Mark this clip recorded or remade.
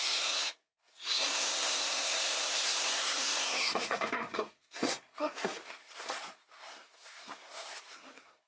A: remade